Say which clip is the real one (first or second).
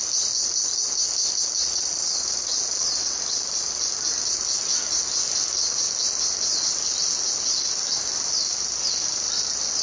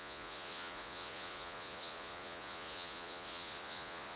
first